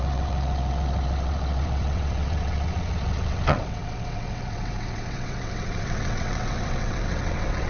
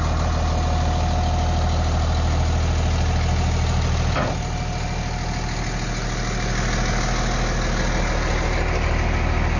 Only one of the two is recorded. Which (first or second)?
second